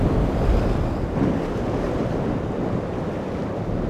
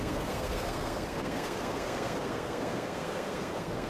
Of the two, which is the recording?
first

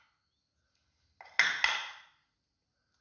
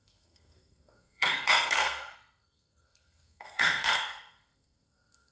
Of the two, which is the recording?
first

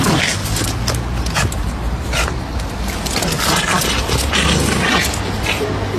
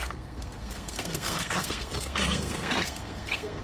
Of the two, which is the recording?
first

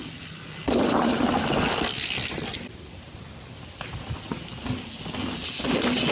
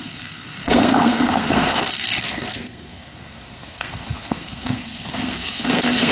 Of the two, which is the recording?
first